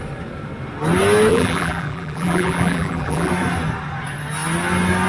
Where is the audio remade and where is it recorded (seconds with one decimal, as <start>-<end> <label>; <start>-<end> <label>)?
0.0-1.3 recorded; 1.3-3.3 remade; 3.3-5.1 recorded